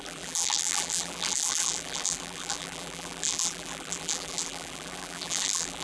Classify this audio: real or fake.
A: fake